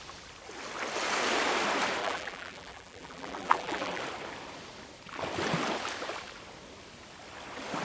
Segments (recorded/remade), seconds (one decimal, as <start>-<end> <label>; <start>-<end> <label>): 0.0-2.0 recorded; 2.0-4.0 remade; 4.0-7.8 recorded